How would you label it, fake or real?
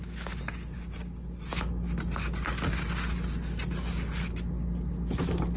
real